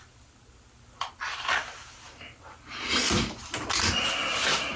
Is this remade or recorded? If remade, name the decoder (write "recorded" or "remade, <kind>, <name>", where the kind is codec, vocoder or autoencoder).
recorded